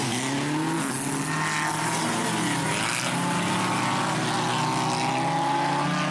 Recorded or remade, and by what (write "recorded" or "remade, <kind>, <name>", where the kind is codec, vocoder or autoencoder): recorded